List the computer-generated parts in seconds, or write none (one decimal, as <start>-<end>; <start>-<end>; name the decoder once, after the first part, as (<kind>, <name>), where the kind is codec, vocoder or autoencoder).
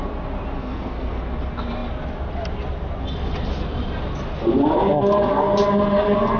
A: 0.6-1.2 (codec, SNAC)